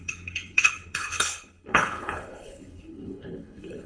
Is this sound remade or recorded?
remade